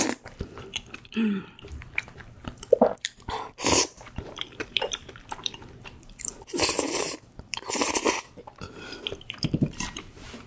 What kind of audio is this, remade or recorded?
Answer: remade